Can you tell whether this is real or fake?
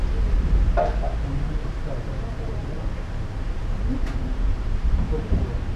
fake